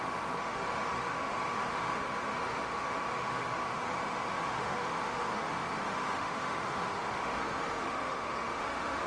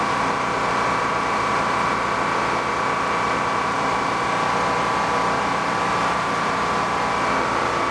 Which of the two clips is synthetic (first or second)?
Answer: first